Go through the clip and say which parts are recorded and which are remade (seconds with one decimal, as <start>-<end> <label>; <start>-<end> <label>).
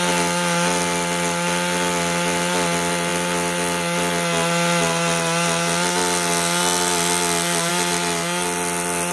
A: 0.0-9.1 recorded